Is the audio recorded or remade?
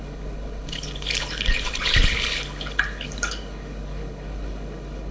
remade